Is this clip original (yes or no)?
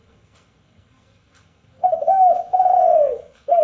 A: no